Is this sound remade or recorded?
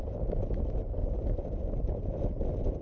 recorded